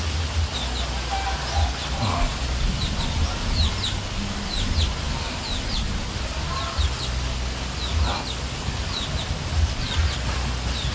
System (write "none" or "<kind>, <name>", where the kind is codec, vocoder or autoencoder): none